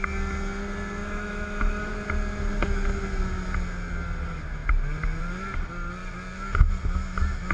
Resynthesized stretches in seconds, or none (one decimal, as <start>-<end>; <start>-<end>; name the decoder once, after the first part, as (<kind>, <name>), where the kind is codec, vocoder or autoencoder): 1.0-1.9 (autoencoder, DAC-VAE)